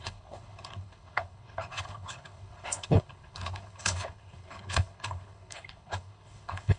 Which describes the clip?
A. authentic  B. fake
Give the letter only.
B